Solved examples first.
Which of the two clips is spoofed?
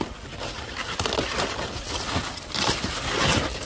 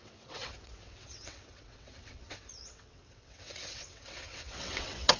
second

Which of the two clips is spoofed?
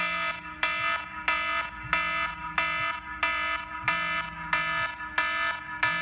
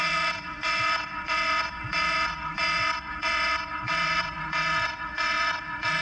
second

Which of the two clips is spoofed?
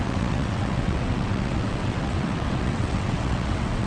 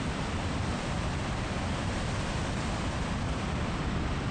first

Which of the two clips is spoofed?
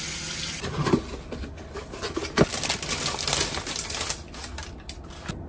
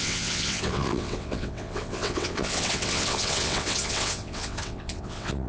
second